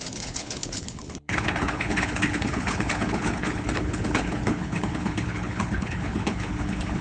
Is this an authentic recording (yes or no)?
no